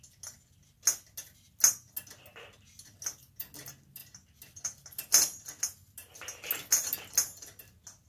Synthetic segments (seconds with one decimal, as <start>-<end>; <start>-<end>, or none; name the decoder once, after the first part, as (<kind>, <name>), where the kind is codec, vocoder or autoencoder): none